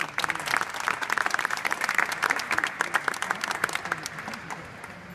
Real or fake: real